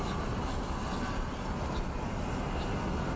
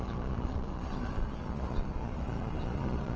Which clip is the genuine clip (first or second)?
first